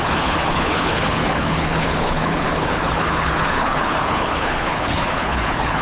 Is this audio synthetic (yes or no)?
yes